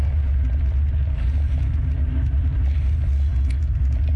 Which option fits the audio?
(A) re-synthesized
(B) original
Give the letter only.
B